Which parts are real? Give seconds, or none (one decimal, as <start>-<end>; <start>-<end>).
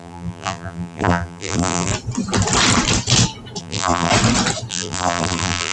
1.9-3.6; 4.1-4.7